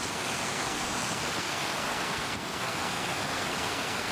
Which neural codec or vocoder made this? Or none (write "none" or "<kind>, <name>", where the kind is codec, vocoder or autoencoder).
codec, SNAC